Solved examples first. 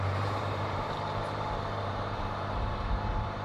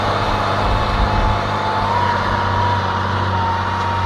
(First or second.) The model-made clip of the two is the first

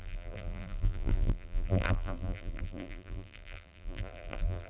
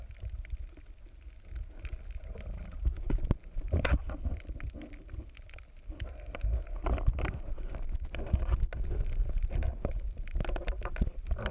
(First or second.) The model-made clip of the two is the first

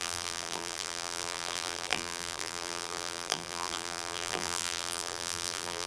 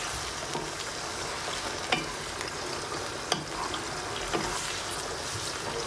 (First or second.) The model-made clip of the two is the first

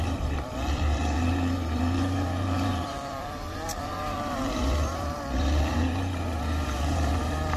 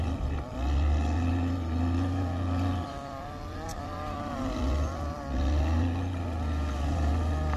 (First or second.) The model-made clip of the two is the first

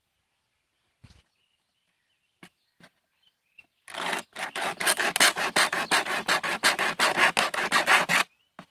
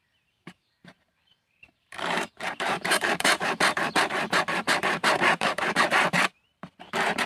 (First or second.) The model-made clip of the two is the second